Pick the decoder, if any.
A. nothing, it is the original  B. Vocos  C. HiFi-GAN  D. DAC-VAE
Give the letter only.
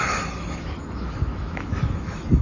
D